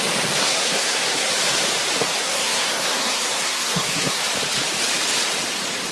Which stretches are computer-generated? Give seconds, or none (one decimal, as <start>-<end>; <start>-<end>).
0.4-1.3; 2.2-4.2

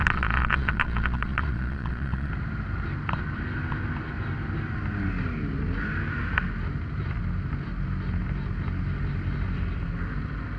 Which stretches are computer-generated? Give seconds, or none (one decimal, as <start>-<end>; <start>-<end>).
0.0-2.3

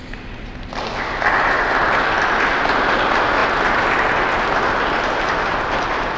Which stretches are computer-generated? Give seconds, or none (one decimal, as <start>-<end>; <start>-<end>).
none

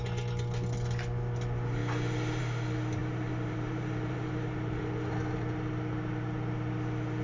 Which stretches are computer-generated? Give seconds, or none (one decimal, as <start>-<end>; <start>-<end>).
3.0-4.8